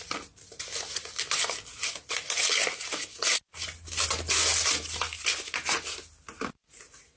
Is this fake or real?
real